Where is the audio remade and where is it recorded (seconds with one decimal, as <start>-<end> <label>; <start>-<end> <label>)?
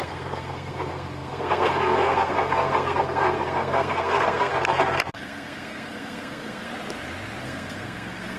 0.0-4.5 remade; 4.5-5.1 recorded; 5.1-6.7 remade; 6.7-7.4 recorded; 7.4-8.4 remade